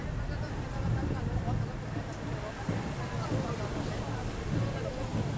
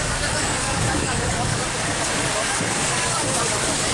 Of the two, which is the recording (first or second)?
first